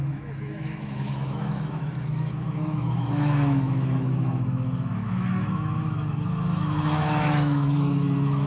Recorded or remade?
remade